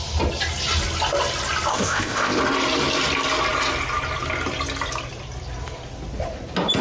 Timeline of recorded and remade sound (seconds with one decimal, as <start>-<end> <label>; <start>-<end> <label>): 0.0-1.7 recorded; 1.7-2.4 remade; 2.4-6.8 recorded